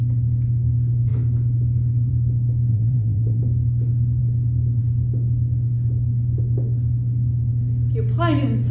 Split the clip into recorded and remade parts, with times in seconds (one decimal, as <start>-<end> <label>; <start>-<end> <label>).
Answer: 0.0-2.7 recorded; 2.7-3.4 remade; 3.4-8.7 recorded